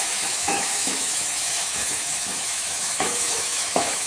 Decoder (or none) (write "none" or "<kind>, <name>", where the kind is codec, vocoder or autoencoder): autoencoder, DAC-VAE